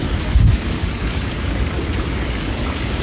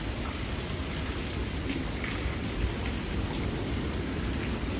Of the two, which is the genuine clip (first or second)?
second